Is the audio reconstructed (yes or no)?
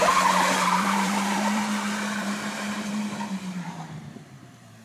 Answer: yes